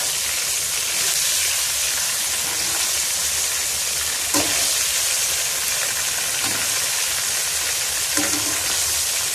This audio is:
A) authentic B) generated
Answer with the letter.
A